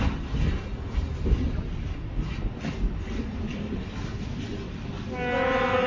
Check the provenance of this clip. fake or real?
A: real